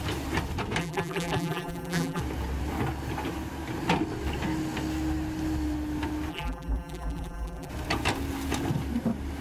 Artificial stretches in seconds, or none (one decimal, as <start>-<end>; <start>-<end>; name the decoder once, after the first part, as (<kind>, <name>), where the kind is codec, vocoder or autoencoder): 0.8-2.2 (vocoder, BigVGAN v2); 6.3-7.7